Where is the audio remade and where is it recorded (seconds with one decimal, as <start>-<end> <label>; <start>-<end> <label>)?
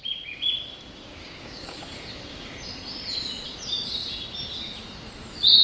0.0-1.2 recorded; 1.2-1.8 remade; 1.8-5.6 recorded